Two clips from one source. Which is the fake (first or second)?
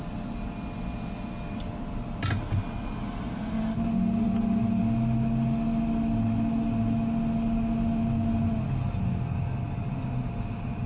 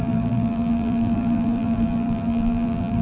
second